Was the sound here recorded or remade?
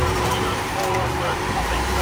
remade